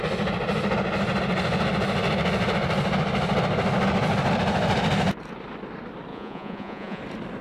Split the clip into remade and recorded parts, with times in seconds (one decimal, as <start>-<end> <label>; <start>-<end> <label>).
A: 0.0-6.1 recorded; 6.1-7.0 remade; 7.0-7.4 recorded